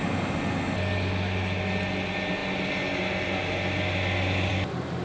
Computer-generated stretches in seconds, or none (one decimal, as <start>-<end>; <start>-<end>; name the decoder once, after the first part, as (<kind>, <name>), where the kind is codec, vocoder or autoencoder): none